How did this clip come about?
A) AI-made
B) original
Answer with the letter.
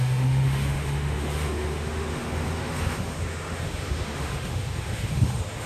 A